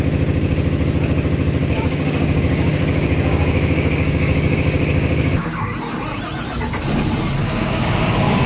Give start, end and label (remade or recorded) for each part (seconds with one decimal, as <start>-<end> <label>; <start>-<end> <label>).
0.0-1.6 recorded; 1.6-5.7 remade; 5.7-7.4 recorded; 7.4-8.5 remade